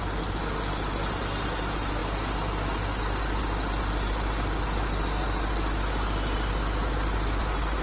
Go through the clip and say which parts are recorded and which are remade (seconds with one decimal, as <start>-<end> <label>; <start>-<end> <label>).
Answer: 0.0-7.8 recorded